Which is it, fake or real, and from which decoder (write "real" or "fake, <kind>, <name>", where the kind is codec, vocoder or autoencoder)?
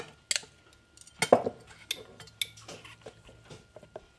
real